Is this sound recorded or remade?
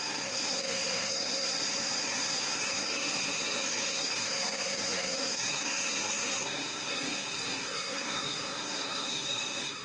remade